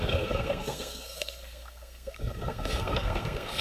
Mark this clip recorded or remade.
remade